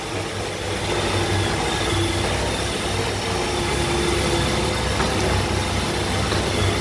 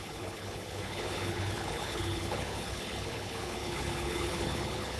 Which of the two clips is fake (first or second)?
second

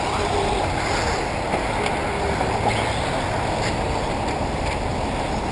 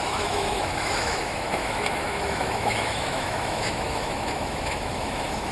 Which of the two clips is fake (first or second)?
second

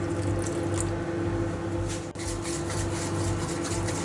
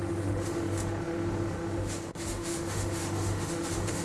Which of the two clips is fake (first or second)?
second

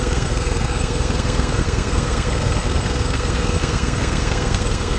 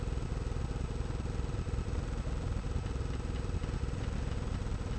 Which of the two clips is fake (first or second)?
first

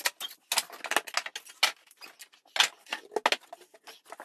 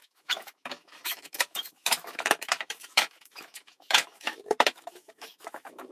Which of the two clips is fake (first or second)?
second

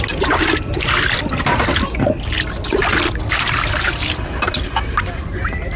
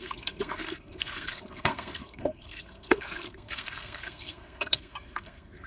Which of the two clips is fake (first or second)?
second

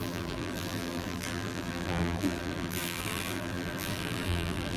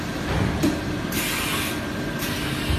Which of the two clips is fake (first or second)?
first